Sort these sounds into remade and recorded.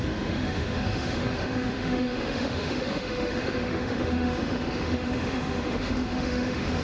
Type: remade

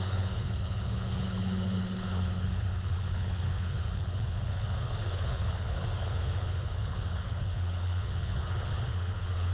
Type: remade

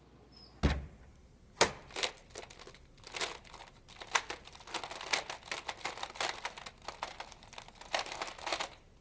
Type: recorded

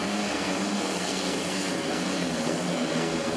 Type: remade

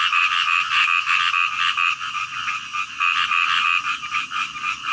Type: recorded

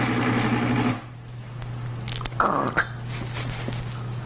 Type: recorded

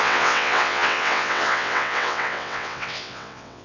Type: remade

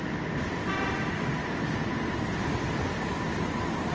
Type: recorded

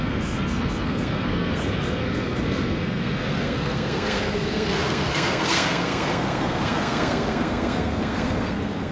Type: remade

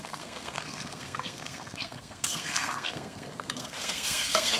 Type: remade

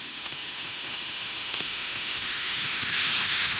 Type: remade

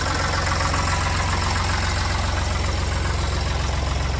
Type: recorded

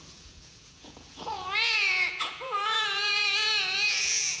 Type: remade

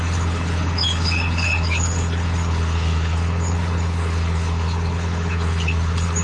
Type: remade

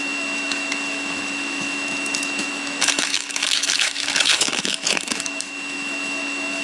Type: remade